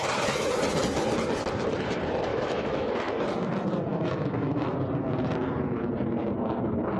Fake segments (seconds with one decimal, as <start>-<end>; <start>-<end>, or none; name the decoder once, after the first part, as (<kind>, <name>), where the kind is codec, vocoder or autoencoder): 2.3-2.9 (autoencoder, DAC-VAE); 3.9-4.7